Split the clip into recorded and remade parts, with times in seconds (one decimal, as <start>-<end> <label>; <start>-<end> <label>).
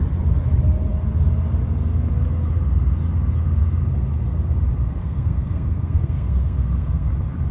0.0-5.0 recorded; 5.0-7.1 remade; 7.1-7.5 recorded